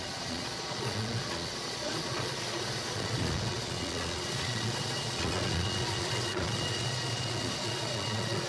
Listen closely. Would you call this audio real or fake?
fake